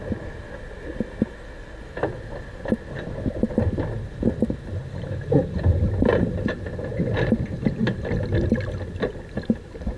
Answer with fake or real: real